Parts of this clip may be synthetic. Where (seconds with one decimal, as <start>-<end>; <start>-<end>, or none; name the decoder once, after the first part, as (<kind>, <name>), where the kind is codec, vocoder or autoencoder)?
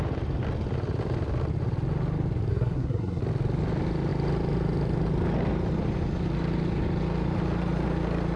2.5-3.2 (codec, SNAC)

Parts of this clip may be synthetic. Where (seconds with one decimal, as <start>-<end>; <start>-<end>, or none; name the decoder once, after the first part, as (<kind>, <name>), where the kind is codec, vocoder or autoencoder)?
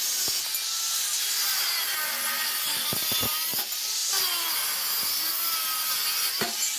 none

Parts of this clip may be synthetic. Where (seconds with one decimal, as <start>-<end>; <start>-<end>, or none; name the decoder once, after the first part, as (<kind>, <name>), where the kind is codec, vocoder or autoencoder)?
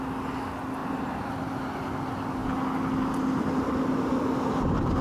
0.8-1.3 (vocoder, BigVGAN v2)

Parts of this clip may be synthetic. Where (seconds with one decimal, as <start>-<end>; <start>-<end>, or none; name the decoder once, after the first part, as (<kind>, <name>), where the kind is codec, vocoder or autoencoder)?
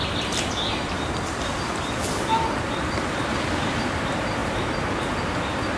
none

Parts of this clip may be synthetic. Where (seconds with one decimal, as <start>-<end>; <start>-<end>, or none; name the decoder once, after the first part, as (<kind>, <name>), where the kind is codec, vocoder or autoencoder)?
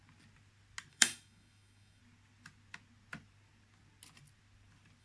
0.9-2.0 (autoencoder, DAC-VAE)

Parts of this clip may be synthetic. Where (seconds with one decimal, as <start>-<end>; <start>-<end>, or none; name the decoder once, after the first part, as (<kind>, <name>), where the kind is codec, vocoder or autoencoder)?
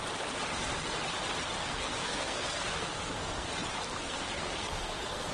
1.6-3.5 (codec, SNAC); 4.0-5.3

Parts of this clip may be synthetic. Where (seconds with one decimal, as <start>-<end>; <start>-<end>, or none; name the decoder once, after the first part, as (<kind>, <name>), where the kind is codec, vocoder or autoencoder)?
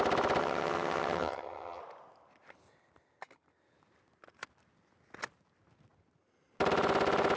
0.4-1.8 (vocoder, HiFi-GAN)